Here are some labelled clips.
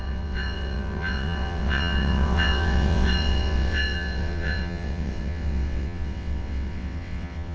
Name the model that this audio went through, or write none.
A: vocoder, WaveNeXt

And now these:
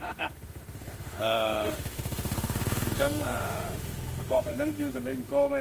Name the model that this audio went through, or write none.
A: autoencoder, DAC-VAE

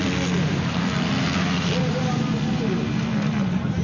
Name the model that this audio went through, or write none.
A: none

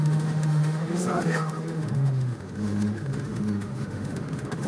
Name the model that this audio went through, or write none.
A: autoencoder, DAC-VAE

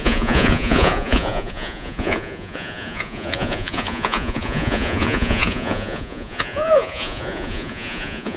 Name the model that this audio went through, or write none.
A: vocoder, Vocos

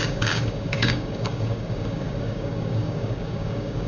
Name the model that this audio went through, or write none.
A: codec, DAC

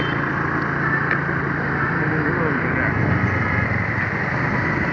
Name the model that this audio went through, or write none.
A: none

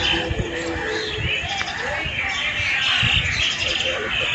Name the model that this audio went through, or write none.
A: none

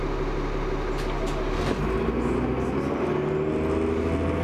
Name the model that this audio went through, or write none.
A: none